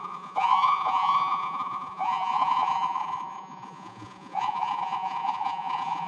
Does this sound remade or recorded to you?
remade